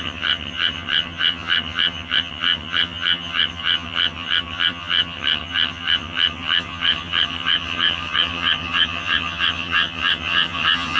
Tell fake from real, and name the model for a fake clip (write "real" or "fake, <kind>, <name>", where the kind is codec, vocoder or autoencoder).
fake, vocoder, HiFi-GAN